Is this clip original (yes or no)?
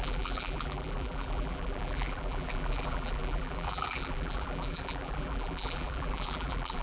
no